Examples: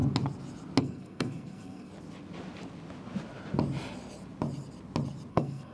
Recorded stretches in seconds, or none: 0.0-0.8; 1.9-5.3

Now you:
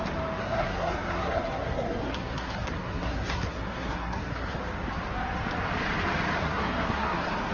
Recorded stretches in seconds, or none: 0.0-0.4; 4.6-6.4

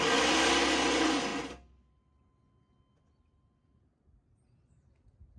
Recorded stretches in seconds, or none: 0.0-5.4

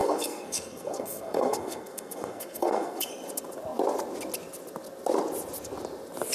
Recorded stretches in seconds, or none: 3.1-6.3

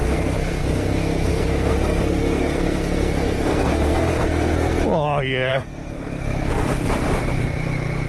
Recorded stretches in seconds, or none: 4.8-5.5; 6.9-8.1

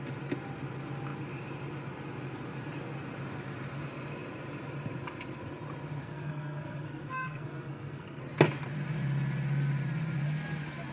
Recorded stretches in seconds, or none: 0.0-6.0; 8.2-10.9

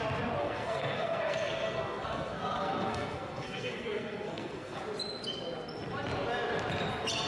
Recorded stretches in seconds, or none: 0.0-0.4; 4.8-7.3